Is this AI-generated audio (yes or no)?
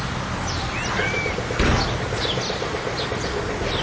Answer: yes